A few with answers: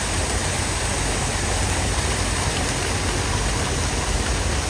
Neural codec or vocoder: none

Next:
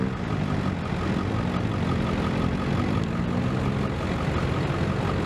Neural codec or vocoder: none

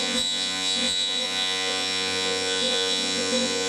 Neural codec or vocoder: vocoder, Vocos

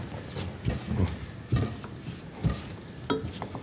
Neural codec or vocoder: none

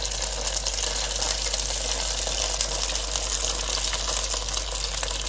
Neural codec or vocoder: none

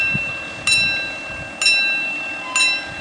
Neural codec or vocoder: none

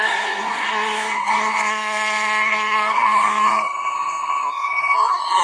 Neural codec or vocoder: codec, SNAC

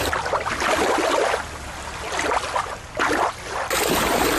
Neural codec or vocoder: none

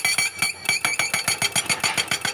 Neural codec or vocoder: none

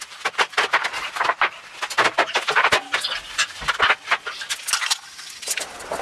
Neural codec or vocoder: none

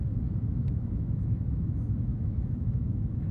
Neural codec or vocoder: autoencoder, DAC-VAE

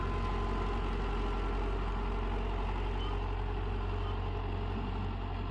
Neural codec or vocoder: none